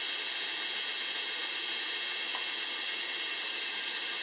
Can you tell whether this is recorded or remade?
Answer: recorded